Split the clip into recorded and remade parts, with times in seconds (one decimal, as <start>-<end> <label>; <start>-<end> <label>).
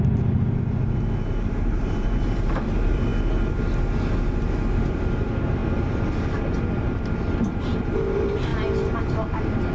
0.0-3.1 remade; 3.1-4.9 recorded; 4.9-5.6 remade; 5.6-7.4 recorded; 7.4-8.5 remade; 8.5-9.7 recorded